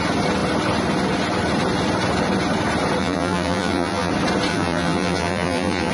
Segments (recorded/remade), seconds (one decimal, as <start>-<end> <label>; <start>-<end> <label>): 0.0-3.0 recorded; 3.0-4.1 remade; 4.1-4.5 recorded; 4.5-5.9 remade